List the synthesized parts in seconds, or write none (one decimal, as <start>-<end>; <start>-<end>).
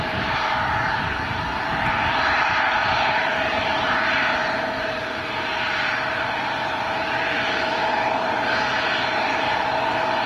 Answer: 1.7-2.2; 2.8-3.5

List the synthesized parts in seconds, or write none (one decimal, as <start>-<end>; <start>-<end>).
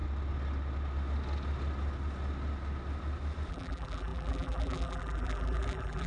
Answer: 3.5-6.1